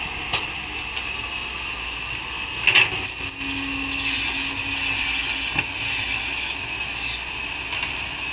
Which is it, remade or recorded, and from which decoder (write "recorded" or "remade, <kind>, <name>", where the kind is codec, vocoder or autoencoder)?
recorded